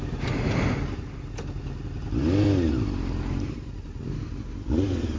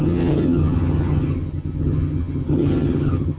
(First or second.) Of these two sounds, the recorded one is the first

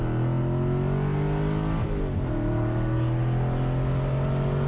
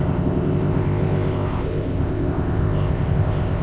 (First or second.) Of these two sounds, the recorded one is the first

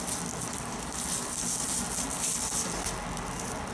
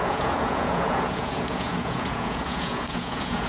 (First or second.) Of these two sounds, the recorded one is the first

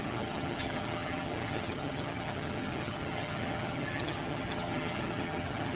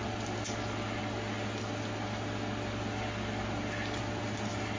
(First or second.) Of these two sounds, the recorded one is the second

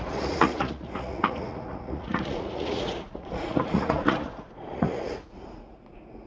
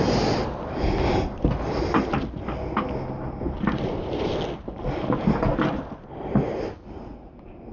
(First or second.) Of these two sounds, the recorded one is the second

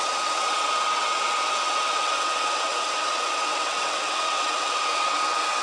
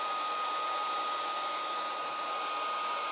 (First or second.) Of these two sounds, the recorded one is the second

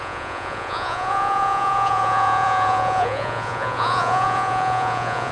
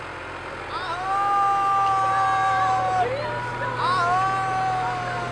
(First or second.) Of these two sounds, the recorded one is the second